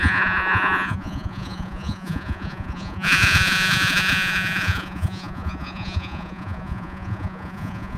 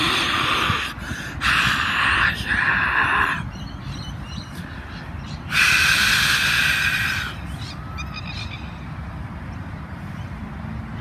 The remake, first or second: first